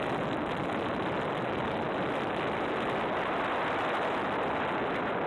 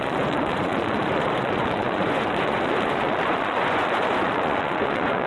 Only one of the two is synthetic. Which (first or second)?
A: second